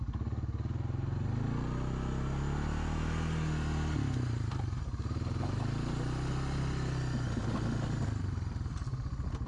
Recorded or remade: recorded